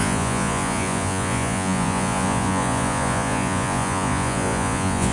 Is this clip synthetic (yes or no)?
yes